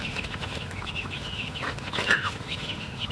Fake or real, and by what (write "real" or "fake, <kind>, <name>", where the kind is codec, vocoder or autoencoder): fake, autoencoder, DAC-VAE